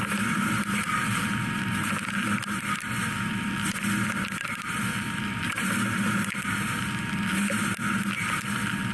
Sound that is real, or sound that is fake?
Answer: real